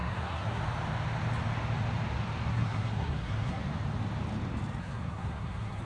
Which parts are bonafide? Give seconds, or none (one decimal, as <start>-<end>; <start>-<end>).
0.6-2.5; 3.6-4.8